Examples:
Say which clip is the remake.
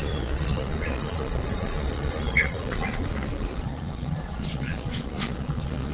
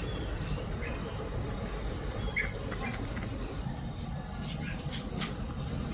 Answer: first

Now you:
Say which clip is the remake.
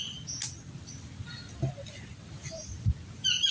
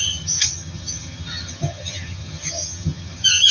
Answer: second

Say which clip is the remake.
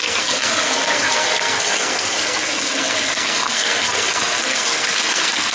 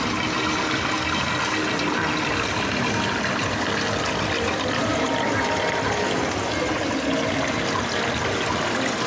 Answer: first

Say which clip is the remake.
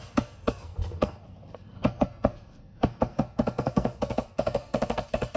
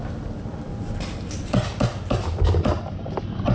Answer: first